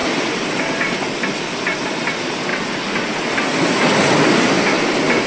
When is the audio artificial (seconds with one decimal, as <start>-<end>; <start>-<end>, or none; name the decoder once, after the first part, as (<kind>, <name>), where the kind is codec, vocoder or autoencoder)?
1.8-2.5 (vocoder, BigVGAN v2)